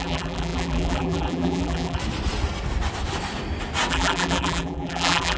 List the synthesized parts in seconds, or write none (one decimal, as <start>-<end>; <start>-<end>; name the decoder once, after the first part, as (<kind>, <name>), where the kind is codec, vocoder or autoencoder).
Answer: 0.0-2.0 (vocoder, BigVGAN v2); 3.9-5.4